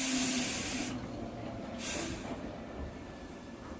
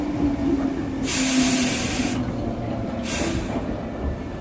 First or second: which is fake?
first